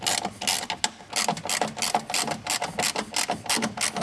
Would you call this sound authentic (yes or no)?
yes